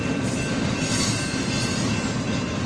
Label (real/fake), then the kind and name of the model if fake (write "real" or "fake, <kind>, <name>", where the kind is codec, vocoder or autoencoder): real